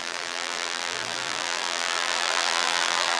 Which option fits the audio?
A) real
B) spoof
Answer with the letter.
B